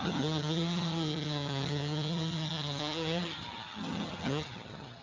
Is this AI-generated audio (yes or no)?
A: yes